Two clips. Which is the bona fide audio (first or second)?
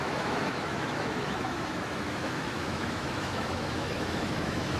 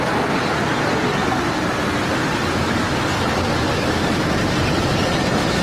second